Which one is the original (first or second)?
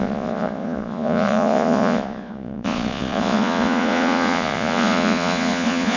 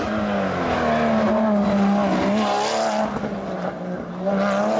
second